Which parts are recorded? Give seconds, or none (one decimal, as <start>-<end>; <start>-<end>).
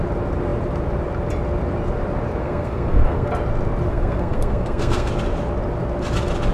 0.0-2.4; 3.3-3.9; 5.1-6.5